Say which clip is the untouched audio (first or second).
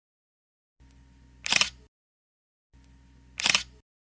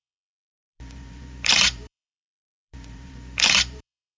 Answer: first